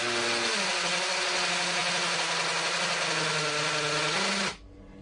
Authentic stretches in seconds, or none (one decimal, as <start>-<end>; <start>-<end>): 0.0-5.0